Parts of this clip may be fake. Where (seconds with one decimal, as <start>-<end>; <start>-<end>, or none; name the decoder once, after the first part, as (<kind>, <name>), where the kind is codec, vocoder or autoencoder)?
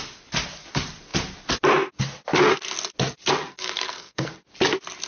3.5-4.3 (codec, SNAC)